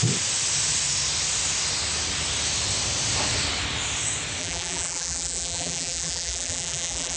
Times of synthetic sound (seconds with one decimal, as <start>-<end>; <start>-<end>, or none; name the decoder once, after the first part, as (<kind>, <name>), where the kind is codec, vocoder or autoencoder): 4.4-7.2 (vocoder, BigVGAN v2)